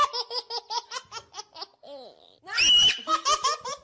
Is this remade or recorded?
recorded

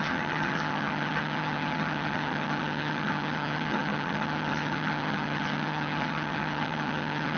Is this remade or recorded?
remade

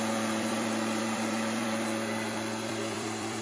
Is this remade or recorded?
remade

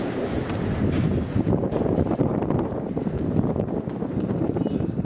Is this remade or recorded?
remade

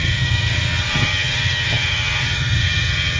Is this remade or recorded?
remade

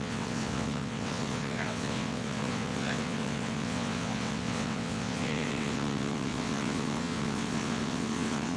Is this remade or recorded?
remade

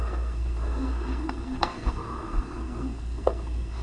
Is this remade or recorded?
remade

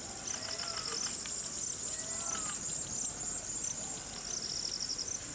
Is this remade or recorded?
recorded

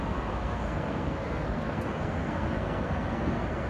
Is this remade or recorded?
remade